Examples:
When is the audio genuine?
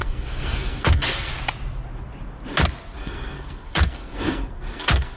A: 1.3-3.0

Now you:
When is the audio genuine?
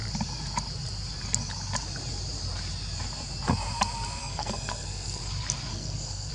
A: 0.0-4.2; 5.2-5.7